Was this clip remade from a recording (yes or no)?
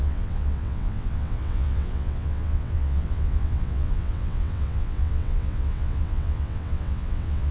yes